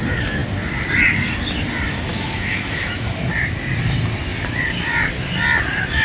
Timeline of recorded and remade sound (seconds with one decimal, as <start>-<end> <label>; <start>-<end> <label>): 0.0-2.1 recorded; 2.1-3.3 remade; 3.3-6.0 recorded